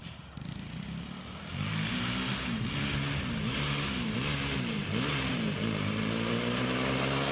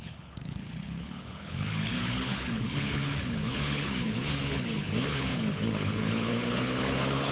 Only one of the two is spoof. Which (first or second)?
second